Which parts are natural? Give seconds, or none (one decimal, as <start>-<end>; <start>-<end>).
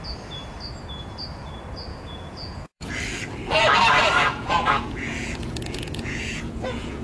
0.0-1.9; 3.0-4.2